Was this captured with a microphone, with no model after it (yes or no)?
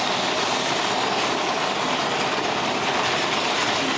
yes